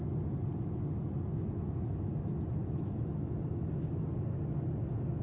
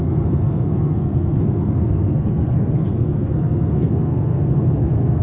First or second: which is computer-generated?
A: second